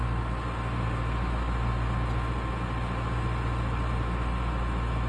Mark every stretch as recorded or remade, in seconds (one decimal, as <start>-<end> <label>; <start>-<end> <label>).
0.0-5.1 recorded